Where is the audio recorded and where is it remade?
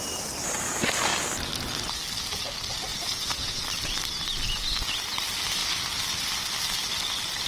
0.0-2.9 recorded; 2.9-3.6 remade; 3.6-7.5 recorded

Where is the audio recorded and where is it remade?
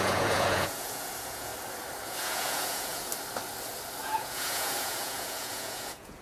0.0-1.5 remade; 1.5-2.0 recorded; 2.0-3.1 remade; 3.1-4.0 recorded; 4.0-6.2 remade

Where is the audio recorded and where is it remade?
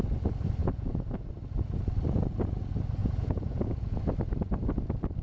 0.0-0.6 recorded; 0.6-1.3 remade; 1.3-3.0 recorded; 3.0-4.0 remade; 4.0-5.2 recorded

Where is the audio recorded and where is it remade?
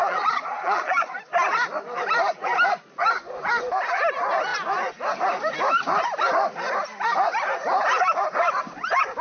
0.0-1.2 remade; 1.2-9.2 recorded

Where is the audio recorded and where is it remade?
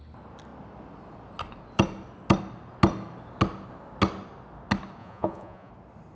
0.0-5.0 recorded; 5.0-5.7 remade; 5.7-6.2 recorded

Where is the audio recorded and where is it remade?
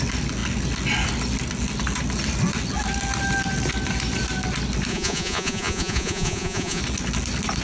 0.0-4.9 recorded; 4.9-6.8 remade; 6.8-7.6 recorded